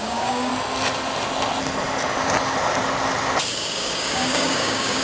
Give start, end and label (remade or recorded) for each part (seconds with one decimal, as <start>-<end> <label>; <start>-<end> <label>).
0.0-0.5 remade; 0.5-3.5 recorded; 3.5-5.0 remade